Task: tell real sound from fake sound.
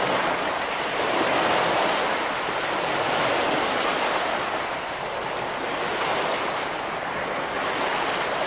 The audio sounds real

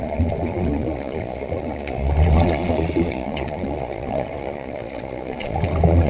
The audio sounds fake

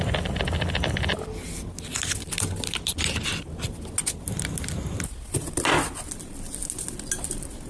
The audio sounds real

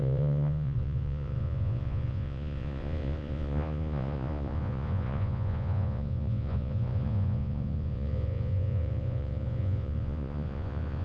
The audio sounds fake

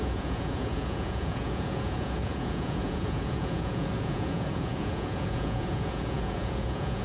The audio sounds fake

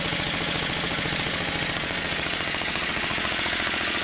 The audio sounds fake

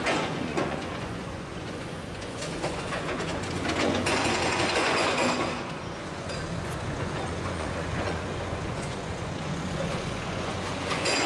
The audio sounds fake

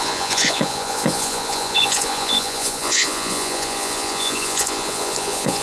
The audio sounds fake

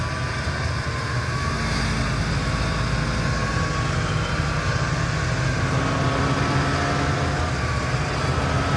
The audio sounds real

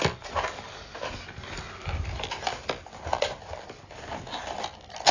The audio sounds real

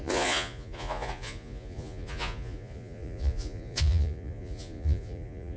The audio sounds fake